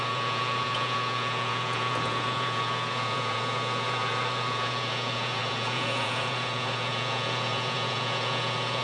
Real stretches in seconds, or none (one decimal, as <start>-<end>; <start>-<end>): none